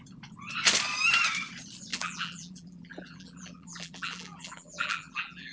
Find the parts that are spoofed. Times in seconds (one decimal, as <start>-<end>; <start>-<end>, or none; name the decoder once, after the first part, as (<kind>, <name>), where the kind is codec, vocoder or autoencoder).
1.9-5.5 (vocoder, BigVGAN v2)

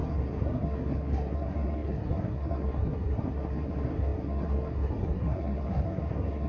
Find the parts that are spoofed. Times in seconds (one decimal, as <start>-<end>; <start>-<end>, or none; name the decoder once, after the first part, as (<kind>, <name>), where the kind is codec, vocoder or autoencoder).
0.0-6.5 (codec, SNAC)

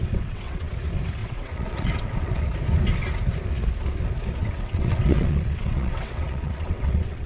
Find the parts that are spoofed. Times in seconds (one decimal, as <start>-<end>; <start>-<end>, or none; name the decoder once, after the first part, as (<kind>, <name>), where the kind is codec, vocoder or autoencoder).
0.0-0.7 (vocoder, WaveNeXt); 1.2-2.4; 4.4-7.3

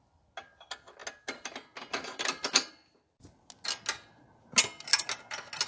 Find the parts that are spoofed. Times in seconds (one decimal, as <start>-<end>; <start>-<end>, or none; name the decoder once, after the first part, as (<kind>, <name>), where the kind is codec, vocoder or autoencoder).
none

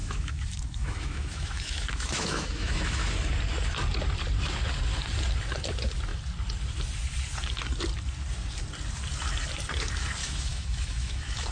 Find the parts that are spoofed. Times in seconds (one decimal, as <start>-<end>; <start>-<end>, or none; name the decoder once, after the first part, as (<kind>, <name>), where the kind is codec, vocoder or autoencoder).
0.0-3.1 (autoencoder, DAC-VAE); 10.2-11.5